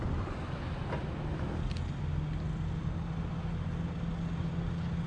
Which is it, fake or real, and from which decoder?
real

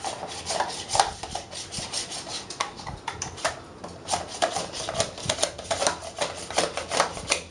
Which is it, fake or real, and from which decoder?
real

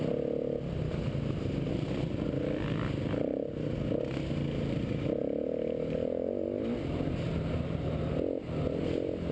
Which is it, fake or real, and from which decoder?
real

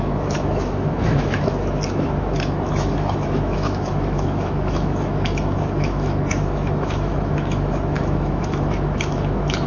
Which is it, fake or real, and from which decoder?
fake, autoencoder, DAC-VAE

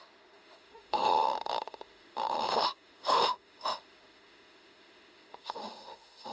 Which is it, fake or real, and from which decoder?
fake, autoencoder, DAC-VAE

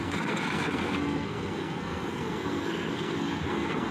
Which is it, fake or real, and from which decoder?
fake, codec, SNAC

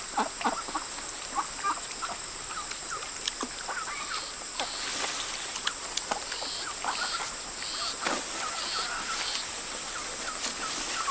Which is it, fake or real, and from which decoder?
real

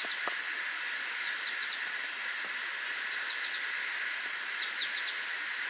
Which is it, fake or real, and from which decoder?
real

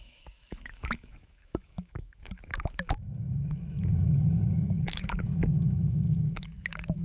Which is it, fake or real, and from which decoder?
fake, autoencoder, DAC-VAE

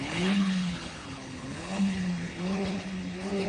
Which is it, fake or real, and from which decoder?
fake, codec, HILCodec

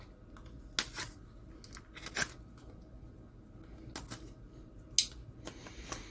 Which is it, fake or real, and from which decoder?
real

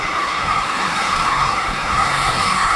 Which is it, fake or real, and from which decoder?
fake, codec, SNAC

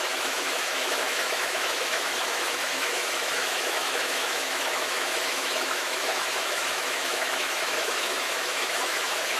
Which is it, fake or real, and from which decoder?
fake, autoencoder, DAC-VAE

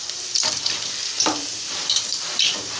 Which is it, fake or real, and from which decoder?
fake, vocoder, BigVGAN v2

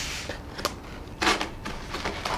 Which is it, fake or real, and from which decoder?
real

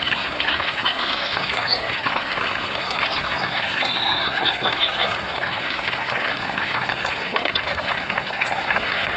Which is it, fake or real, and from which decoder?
fake, codec, SNAC